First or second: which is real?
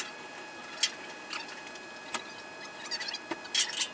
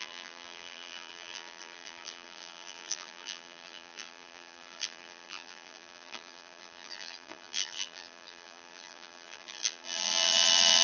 first